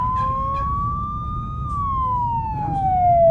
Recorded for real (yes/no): yes